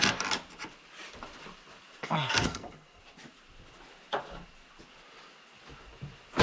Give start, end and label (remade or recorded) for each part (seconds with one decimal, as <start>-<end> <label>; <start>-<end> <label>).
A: 0.0-2.0 recorded; 2.0-3.0 remade; 3.0-6.4 recorded